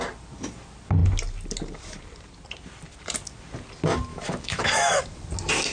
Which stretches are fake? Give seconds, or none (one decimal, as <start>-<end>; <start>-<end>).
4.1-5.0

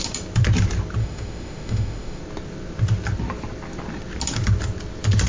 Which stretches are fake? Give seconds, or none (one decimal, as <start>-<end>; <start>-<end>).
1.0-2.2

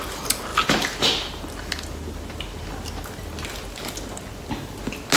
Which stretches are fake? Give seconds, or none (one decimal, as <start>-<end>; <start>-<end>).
none

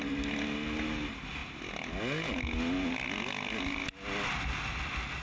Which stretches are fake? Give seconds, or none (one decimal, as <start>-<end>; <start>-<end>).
none

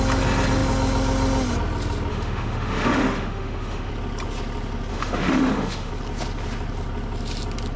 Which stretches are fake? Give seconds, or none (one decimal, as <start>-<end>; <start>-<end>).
2.1-3.9; 4.9-5.9